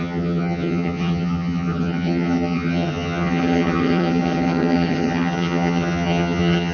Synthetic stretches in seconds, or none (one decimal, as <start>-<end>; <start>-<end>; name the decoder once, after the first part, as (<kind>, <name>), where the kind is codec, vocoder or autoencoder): 0.0-6.7 (vocoder, HiFi-GAN)